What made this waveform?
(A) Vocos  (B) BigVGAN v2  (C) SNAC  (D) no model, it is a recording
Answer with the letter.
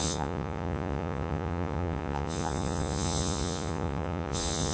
A